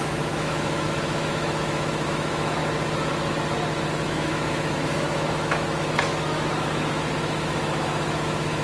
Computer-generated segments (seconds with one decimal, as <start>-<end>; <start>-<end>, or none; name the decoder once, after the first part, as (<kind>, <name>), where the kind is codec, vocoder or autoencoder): 0.0-2.6 (autoencoder, DAC-VAE); 3.9-8.6